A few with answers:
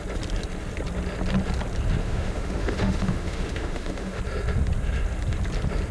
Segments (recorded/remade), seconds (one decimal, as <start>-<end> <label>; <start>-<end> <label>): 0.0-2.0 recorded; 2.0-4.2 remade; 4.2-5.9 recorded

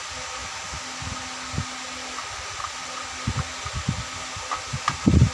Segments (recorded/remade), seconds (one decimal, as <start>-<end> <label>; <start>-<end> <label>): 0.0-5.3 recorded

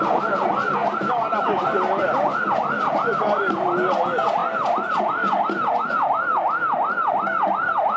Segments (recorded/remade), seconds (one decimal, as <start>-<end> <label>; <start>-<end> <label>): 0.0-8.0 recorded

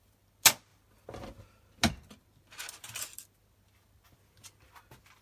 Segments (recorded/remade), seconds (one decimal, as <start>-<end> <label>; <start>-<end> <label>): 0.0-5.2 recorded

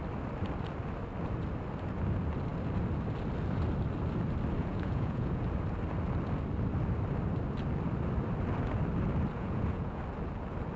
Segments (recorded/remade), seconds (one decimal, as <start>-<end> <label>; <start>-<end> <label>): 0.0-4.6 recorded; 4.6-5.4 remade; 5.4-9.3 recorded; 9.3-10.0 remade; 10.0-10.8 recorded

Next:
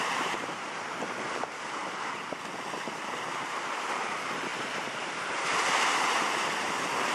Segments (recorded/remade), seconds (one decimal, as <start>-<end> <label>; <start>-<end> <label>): 0.0-1.8 remade; 1.8-2.9 recorded; 2.9-7.1 remade

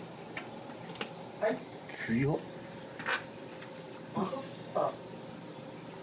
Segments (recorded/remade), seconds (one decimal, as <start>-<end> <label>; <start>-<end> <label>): 0.0-4.1 recorded; 4.1-4.9 remade; 4.9-6.0 recorded